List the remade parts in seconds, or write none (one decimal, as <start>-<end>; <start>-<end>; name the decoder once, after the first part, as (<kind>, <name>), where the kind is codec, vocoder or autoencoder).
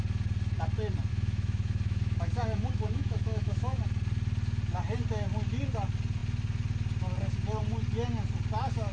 1.1-3.8 (autoencoder, DAC-VAE)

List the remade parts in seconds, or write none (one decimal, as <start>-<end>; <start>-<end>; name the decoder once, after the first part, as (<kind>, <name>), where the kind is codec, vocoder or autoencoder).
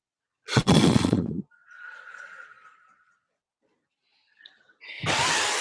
0.0-3.4 (vocoder, Vocos)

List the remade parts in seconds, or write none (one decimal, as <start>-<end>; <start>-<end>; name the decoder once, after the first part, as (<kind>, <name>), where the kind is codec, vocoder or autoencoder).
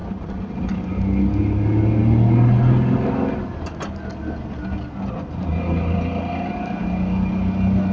none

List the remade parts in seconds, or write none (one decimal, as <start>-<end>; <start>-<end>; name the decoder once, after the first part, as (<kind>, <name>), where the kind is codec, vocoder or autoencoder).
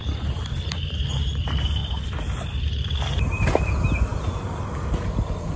1.8-2.6 (vocoder, BigVGAN v2)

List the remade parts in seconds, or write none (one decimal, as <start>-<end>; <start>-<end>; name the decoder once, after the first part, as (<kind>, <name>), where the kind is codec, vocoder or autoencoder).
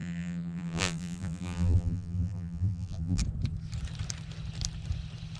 0.0-3.2 (vocoder, BigVGAN v2)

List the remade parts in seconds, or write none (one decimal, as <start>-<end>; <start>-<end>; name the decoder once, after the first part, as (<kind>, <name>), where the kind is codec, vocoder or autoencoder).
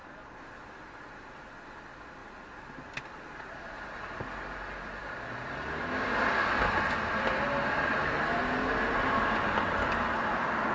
none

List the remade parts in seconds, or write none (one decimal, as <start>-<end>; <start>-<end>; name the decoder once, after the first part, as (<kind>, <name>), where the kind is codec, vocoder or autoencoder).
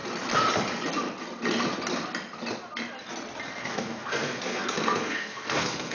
3.5-5.9 (codec, SNAC)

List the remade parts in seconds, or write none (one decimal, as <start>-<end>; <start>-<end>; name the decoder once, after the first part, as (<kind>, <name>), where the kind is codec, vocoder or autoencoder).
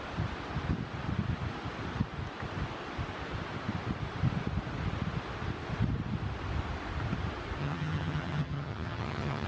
7.6-9.5 (vocoder, HiFi-GAN)